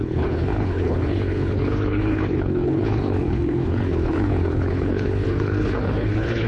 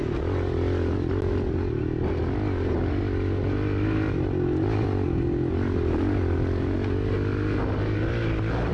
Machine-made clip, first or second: first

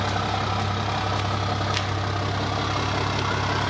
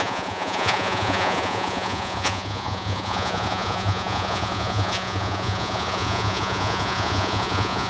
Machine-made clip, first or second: second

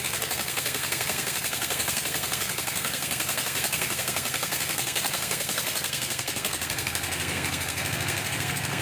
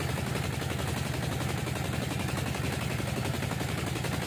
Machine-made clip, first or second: first